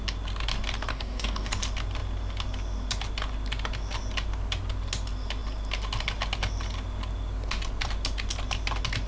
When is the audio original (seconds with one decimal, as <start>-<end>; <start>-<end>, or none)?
0.0-0.9; 1.5-9.1